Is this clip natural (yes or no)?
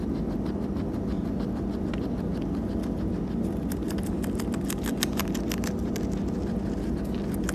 yes